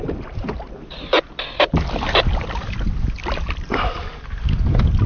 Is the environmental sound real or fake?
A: real